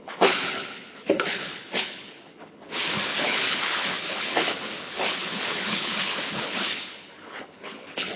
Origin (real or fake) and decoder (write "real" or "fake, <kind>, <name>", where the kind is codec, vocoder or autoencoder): fake, codec, HILCodec